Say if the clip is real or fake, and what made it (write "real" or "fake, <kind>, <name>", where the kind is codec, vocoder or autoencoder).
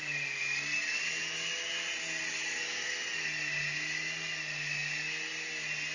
real